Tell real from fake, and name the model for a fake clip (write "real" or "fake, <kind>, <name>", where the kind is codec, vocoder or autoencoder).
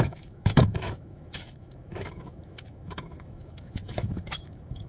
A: fake, autoencoder, DAC-VAE